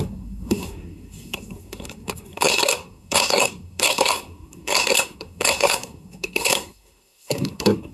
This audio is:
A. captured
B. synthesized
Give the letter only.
B